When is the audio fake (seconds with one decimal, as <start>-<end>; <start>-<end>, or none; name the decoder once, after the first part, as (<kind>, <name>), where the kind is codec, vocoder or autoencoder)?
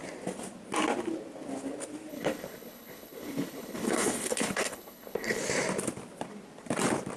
2.1-5.4 (codec, HILCodec)